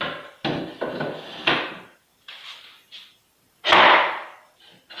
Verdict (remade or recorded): recorded